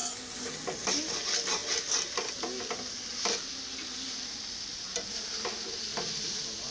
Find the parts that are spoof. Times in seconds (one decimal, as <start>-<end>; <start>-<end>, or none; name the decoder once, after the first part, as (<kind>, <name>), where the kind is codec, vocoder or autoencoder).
none